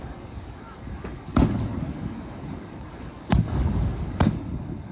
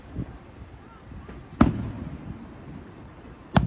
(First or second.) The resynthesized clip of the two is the first